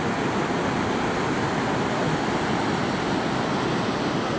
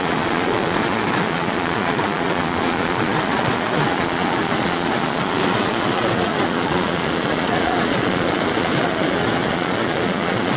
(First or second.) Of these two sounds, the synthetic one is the second